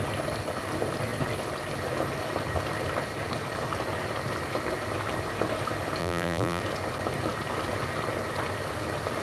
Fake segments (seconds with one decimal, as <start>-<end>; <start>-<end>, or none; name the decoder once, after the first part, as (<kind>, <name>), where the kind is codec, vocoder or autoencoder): 6.0-6.6 (vocoder, BigVGAN v2)